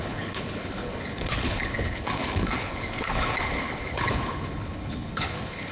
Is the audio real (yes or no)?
no